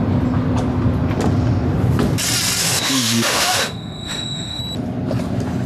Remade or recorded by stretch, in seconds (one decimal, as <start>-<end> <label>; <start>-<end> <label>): 0.0-2.6 recorded; 2.6-4.6 remade; 4.6-5.7 recorded